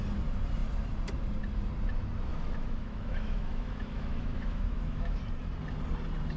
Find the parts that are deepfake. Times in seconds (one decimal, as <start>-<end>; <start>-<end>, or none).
2.3-5.2